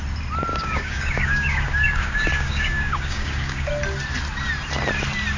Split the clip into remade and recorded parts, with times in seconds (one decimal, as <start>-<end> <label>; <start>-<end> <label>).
0.0-0.5 recorded; 0.5-3.7 remade; 3.7-5.4 recorded